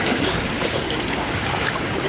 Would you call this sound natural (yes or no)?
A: no